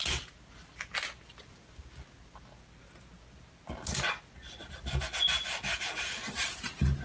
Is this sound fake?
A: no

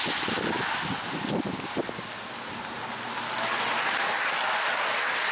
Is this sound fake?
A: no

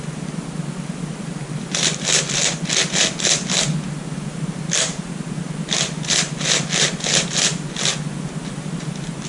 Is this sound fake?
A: no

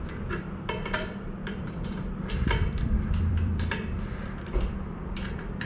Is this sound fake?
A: yes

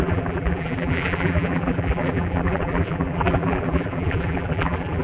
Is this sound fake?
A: yes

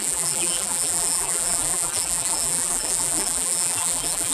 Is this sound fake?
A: yes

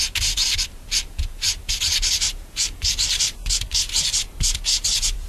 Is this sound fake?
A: yes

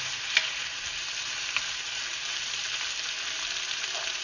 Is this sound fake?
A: no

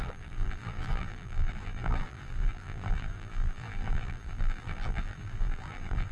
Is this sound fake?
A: yes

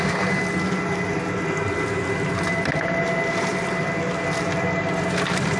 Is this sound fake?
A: no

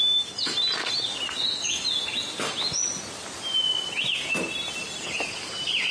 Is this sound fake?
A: no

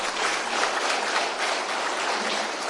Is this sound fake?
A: no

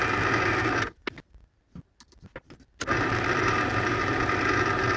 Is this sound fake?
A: no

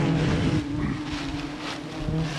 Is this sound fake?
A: no